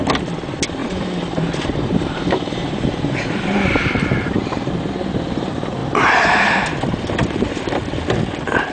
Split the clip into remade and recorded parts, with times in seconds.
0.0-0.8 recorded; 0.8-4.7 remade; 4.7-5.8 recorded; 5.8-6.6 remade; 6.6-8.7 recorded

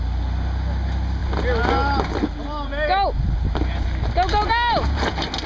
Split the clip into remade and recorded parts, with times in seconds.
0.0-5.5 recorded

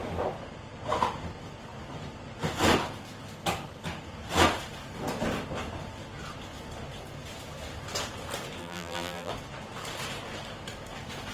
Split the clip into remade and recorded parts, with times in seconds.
0.0-8.6 recorded; 8.6-9.3 remade; 9.3-11.3 recorded

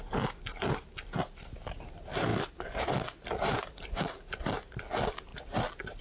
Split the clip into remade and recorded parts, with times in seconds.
0.0-6.0 recorded